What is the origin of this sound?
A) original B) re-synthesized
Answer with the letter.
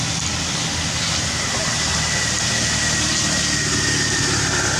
A